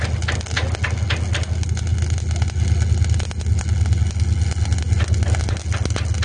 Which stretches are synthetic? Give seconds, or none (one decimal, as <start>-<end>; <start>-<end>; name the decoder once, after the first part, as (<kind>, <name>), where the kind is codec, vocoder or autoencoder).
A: none

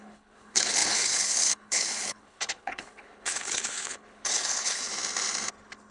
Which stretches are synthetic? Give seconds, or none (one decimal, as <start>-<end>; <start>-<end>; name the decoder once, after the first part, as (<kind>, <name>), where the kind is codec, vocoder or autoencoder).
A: 0.0-4.9 (codec, HILCodec)

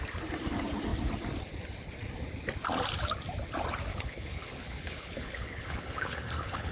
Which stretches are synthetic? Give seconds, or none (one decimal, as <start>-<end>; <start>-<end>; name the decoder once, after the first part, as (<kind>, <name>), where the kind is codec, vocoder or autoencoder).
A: 3.9-6.7 (codec, HILCodec)

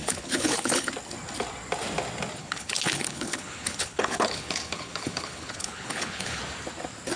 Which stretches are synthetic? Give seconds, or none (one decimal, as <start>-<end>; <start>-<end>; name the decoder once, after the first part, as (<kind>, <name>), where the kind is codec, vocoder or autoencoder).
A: 0.0-0.9 (codec, HILCodec); 2.4-6.4